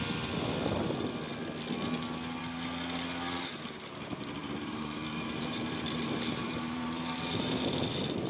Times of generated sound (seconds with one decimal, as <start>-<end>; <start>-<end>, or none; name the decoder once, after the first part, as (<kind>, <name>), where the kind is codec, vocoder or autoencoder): 4.4-7.8 (vocoder, BigVGAN v2)